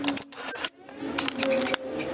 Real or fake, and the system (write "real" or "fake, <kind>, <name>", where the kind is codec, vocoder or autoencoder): real